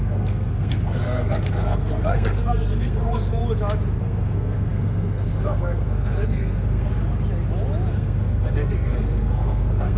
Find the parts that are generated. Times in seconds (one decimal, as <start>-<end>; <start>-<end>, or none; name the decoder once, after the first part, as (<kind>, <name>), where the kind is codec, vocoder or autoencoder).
0.0-3.4 (codec, SNAC); 4.0-6.9; 7.9-10.0